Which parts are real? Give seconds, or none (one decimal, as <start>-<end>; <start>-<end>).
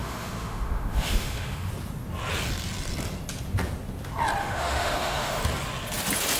1.7-4.4; 5.4-6.4